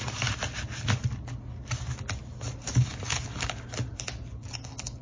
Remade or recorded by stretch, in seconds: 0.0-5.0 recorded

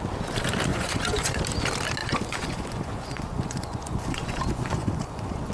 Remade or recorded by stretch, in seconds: 0.0-0.7 recorded; 0.7-1.4 remade; 1.4-2.0 recorded; 2.0-5.5 remade

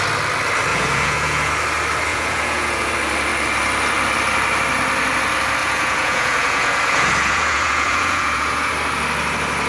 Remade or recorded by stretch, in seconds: 0.0-0.7 recorded; 0.7-1.5 remade; 1.5-2.1 recorded; 2.1-2.9 remade; 2.9-5.6 recorded; 5.6-8.7 remade; 8.7-9.7 recorded